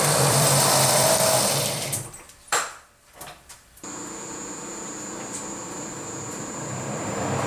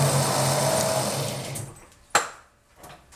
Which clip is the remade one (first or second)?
first